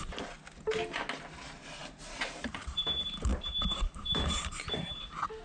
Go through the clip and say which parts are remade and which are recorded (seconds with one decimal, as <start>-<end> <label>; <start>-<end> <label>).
0.0-1.8 recorded; 1.8-5.0 remade; 5.0-5.4 recorded